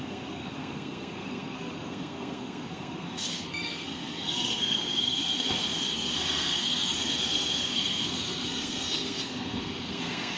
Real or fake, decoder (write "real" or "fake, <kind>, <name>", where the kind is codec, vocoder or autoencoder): fake, codec, SNAC